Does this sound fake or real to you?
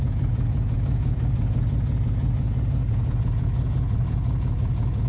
fake